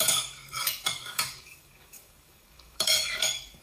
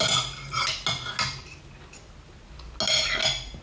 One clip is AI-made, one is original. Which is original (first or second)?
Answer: second